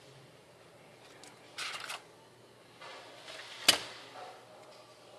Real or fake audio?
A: real